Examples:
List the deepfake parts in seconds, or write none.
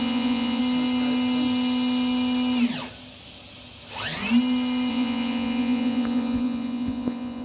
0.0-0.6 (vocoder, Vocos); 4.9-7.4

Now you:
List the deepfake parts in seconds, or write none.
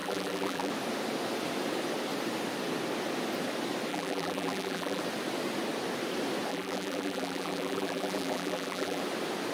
0.0-0.7 (vocoder, BigVGAN v2); 3.9-5.0; 6.5-9.0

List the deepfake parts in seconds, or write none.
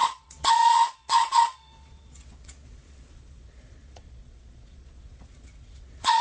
0.0-6.2 (vocoder, Vocos)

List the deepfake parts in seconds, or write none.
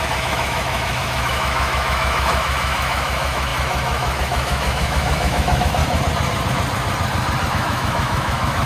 0.0-5.8 (autoencoder, DAC-VAE); 7.5-8.7